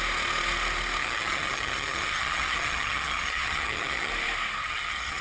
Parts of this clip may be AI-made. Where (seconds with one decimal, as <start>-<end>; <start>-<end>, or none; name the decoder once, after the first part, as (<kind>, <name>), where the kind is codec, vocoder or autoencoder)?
1.0-4.1 (vocoder, HiFi-GAN); 4.6-5.2